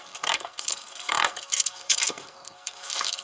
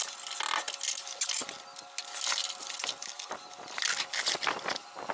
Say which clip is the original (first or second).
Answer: second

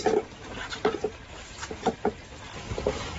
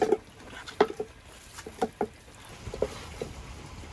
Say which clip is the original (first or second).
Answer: second